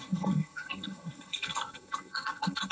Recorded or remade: remade